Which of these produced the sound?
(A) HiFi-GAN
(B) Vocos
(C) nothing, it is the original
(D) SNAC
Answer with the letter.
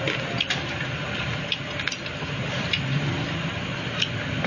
C